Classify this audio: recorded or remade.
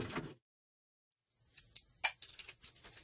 recorded